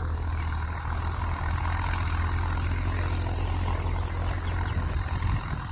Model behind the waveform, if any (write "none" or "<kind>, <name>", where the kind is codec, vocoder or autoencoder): none